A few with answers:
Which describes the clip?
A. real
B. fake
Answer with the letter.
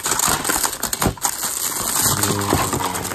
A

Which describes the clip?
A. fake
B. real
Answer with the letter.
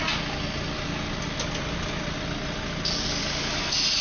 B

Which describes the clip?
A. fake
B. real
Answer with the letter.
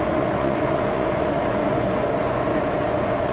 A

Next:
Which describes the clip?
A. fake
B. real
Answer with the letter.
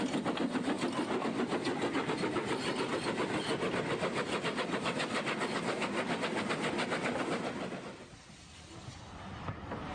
B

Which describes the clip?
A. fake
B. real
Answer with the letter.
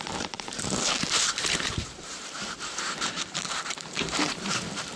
A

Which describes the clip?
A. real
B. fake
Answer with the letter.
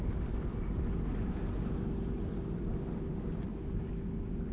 A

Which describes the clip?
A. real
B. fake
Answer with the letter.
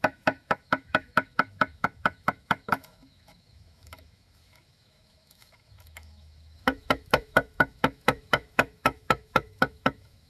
B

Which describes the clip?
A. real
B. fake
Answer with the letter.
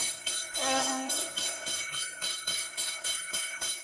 B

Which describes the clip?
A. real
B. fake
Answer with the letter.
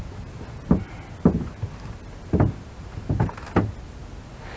A